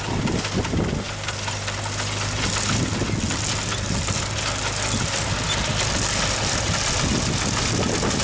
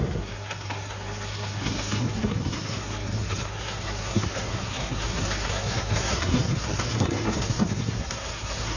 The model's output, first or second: second